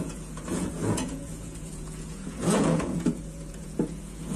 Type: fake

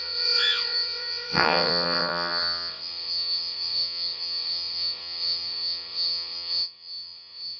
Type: fake